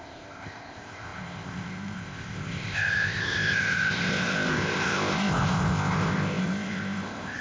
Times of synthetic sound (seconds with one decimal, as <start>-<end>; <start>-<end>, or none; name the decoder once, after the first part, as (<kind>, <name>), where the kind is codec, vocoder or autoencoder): 0.0-7.4 (codec, ZipCodec)

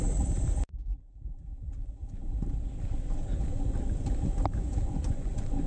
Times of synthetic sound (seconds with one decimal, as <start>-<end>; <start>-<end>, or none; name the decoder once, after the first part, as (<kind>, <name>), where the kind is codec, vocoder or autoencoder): 4.7-5.3 (vocoder, Vocos)

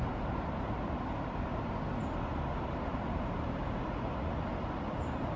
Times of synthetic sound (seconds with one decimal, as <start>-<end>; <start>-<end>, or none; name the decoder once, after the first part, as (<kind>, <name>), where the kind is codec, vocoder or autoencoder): none